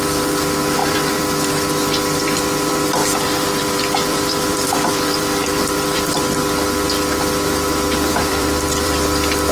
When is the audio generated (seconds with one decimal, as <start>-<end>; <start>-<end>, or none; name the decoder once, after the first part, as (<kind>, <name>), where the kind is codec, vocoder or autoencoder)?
0.8-1.5 (vocoder, BigVGAN v2); 3.0-6.1; 8.1-9.0